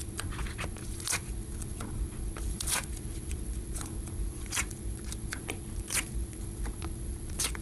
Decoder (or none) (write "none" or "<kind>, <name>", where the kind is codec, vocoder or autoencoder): vocoder, Vocos